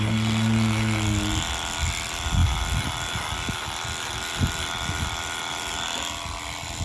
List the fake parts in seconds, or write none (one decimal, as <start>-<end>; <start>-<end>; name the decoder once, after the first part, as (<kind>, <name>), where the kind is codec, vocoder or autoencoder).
none